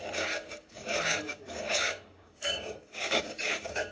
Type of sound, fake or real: fake